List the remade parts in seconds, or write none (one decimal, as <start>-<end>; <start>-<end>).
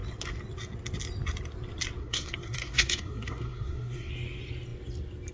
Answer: 2.0-4.1